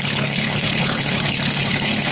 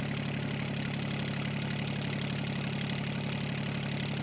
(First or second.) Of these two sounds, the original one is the second